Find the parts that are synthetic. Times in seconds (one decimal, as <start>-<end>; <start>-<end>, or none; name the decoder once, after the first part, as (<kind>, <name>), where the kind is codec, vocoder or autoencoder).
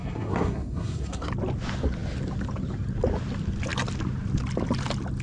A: 0.0-1.3 (codec, SNAC)